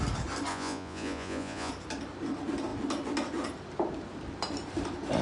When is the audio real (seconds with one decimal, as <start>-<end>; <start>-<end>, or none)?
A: 0.0-0.5; 1.7-5.2